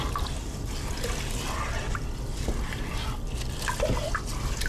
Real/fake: real